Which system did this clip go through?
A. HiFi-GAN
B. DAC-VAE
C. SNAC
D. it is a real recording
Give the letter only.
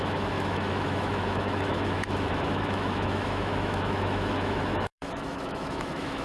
B